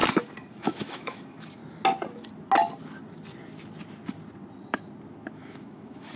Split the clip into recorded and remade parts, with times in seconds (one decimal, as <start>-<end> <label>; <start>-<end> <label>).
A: 0.0-0.6 recorded; 0.6-1.6 remade; 1.6-5.3 recorded; 5.3-6.2 remade